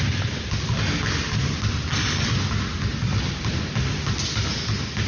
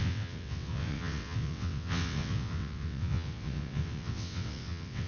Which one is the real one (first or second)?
first